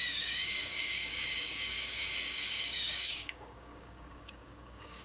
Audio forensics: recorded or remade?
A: remade